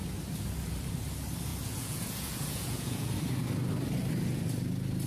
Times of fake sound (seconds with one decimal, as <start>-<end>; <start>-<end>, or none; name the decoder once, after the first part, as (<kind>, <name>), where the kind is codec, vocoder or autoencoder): 1.5-3.1 (vocoder, Vocos)